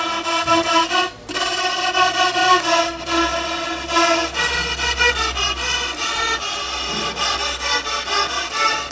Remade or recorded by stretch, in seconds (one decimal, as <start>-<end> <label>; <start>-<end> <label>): 0.0-8.9 recorded